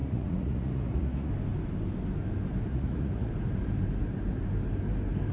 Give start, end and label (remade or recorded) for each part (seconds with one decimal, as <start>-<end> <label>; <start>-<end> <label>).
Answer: 0.0-1.3 remade; 1.3-2.7 recorded; 2.7-3.3 remade; 3.3-5.3 recorded